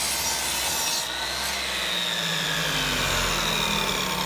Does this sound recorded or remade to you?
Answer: recorded